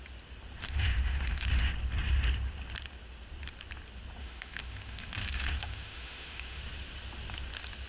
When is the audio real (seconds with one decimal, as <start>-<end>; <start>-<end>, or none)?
0.0-0.6; 1.7-4.2; 6.6-7.9